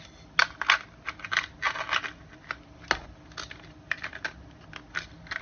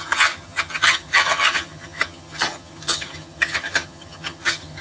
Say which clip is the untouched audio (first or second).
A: first